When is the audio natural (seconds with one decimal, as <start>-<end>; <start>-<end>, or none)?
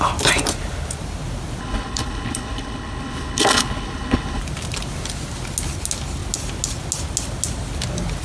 0.0-1.6; 4.4-8.2